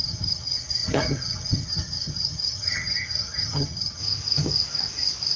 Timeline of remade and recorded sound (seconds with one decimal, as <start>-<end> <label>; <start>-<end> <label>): 0.0-4.0 remade; 4.0-5.4 recorded